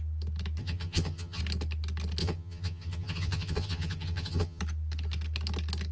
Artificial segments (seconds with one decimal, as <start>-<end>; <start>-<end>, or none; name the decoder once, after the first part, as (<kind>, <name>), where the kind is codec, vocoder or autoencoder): 0.6-1.4 (vocoder, HiFi-GAN); 2.2-4.6